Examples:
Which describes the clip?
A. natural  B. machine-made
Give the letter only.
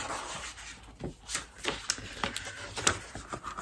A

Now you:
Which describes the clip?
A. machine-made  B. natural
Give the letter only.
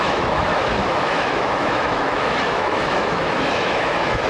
A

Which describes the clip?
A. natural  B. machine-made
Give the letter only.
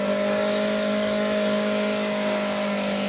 B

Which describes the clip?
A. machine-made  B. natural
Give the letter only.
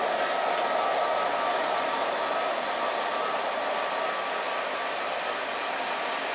B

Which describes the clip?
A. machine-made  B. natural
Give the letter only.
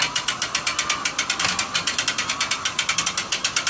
B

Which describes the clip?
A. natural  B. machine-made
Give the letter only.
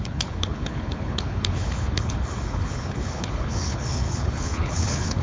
B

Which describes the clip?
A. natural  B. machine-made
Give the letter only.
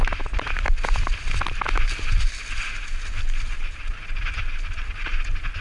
A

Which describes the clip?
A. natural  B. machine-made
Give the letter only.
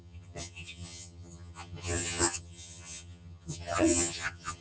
B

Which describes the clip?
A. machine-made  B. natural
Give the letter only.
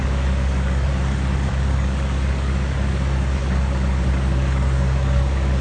A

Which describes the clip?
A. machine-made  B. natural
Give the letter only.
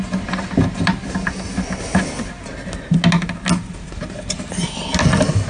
B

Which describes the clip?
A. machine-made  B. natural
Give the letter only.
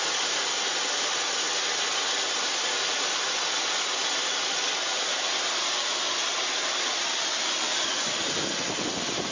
B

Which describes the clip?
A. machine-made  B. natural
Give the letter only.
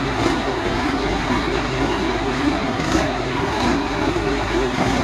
A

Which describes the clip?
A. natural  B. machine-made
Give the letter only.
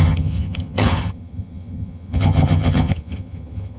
B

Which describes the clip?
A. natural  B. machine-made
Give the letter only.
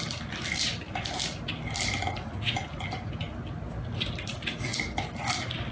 A